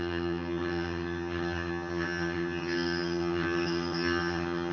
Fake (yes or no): yes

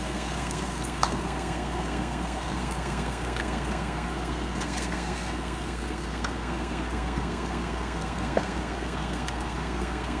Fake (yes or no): yes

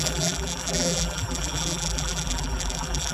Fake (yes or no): yes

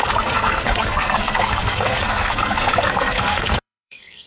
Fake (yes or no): yes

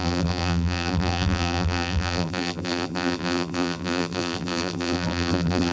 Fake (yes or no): yes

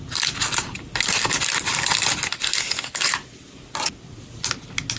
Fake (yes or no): no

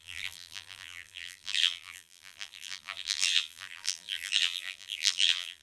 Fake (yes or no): yes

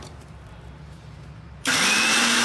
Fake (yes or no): yes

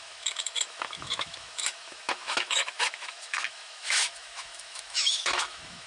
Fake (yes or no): yes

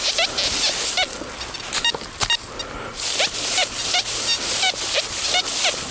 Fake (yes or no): no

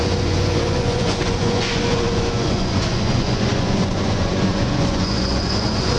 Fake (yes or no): yes